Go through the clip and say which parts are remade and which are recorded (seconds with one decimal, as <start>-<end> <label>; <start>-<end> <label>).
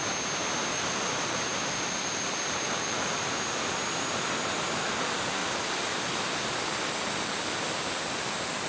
0.0-0.7 recorded; 0.7-3.4 remade; 3.4-5.4 recorded; 5.4-6.1 remade; 6.1-8.7 recorded